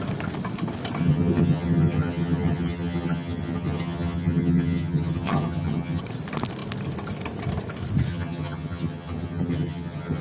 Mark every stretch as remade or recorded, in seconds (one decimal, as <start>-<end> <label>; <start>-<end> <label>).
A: 0.0-1.0 recorded; 1.0-6.0 remade; 6.0-8.1 recorded; 8.1-10.2 remade